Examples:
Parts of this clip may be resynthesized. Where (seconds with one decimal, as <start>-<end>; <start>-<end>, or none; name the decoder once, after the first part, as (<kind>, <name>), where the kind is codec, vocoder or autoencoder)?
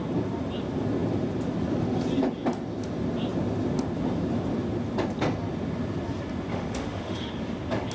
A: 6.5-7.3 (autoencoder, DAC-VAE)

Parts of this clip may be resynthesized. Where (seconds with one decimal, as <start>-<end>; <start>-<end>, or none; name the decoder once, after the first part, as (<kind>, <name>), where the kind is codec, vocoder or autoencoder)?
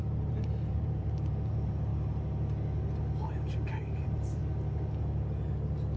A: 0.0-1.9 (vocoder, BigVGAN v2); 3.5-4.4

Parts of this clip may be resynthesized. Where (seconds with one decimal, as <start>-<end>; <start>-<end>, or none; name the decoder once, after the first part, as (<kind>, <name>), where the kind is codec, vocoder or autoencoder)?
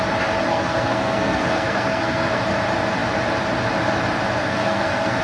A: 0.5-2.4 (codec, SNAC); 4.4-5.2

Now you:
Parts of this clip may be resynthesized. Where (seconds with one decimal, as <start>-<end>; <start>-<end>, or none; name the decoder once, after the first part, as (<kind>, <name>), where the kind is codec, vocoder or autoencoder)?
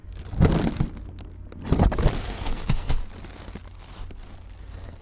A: 2.2-3.0 (codec, SNAC); 4.6-5.0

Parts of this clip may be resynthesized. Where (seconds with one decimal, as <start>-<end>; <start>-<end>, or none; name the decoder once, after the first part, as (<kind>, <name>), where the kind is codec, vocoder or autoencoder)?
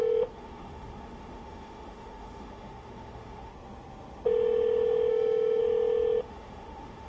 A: 0.0-3.5 (autoencoder, DAC-VAE); 5.1-5.6; 6.2-7.1